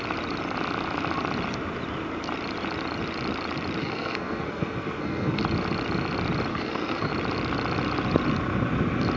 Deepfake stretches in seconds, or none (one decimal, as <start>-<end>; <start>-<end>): 3.8-5.4; 6.5-7.1